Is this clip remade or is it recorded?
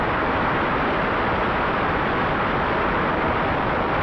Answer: recorded